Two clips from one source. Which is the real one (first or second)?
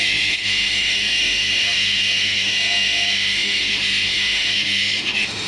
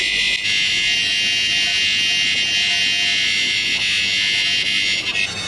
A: second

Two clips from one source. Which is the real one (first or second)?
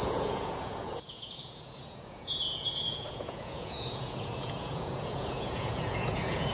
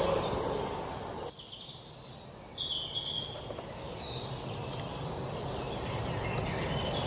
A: second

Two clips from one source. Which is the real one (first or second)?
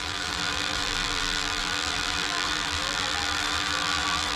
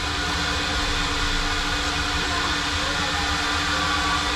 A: second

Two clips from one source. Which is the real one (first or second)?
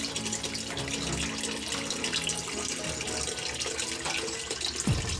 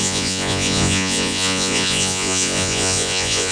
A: first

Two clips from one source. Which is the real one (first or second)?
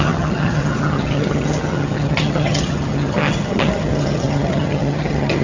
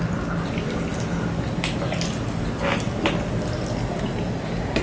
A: second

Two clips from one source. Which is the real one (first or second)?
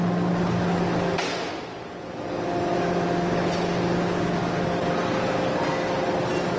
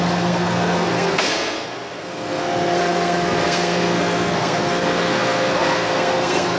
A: first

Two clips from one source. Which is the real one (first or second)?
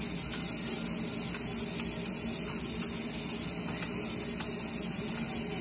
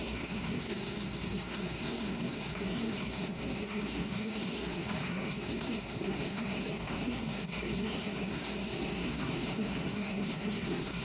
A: first